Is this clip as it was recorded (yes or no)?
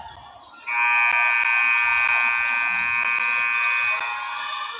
yes